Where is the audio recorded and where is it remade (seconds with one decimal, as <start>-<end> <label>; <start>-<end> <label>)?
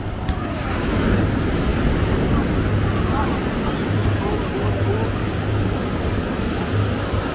0.0-7.3 recorded